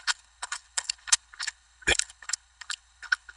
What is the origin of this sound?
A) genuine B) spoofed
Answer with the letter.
B